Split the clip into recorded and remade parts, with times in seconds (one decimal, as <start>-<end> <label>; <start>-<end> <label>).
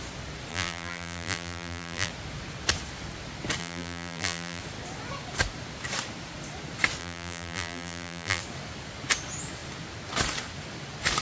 0.0-0.5 recorded; 0.5-2.1 remade; 2.1-3.6 recorded; 3.6-4.6 remade; 4.6-7.0 recorded; 7.0-8.4 remade; 8.4-11.2 recorded